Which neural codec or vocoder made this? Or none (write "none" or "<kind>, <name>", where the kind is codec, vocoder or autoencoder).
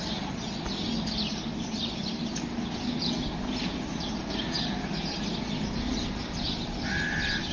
none